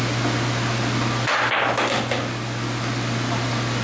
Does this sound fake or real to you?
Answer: real